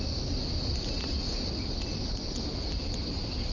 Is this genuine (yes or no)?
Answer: yes